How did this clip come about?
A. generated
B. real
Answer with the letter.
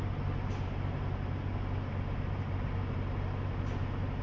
B